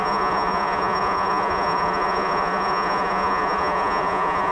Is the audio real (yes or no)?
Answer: no